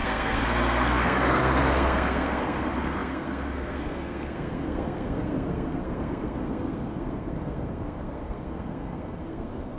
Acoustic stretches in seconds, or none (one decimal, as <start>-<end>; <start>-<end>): none